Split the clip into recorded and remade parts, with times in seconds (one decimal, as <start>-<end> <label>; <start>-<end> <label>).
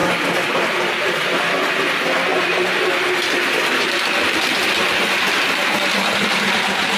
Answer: 0.0-1.4 remade; 1.4-2.3 recorded; 2.3-5.4 remade; 5.4-7.0 recorded